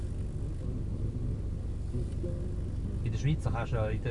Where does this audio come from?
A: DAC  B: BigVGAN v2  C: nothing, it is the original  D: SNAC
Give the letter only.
C